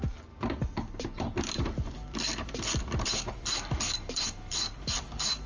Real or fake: fake